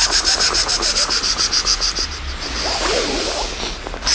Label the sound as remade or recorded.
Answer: recorded